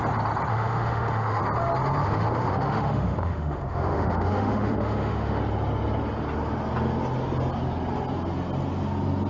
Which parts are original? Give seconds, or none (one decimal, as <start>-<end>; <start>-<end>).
0.0-0.5; 1.4-2.0; 5.4-9.3